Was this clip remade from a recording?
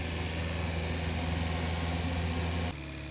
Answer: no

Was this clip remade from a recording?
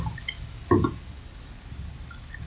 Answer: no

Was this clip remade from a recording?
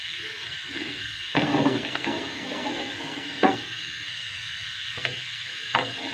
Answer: yes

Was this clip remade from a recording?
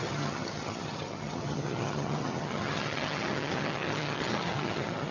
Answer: yes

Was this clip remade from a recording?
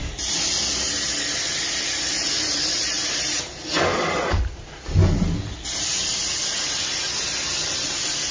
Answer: no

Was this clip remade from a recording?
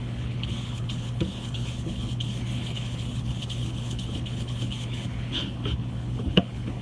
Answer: yes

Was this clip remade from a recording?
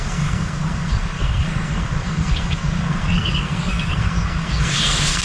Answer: yes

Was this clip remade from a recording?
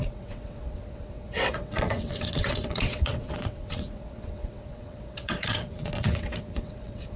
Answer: yes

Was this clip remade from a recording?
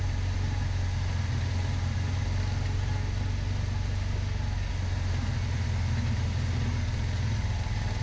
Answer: no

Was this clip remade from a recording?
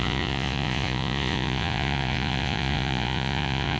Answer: yes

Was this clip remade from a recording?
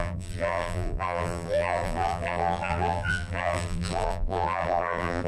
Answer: yes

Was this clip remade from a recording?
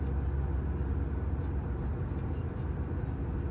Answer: no